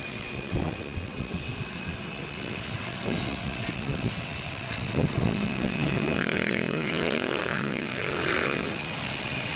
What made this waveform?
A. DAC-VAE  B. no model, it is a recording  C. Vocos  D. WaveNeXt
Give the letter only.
D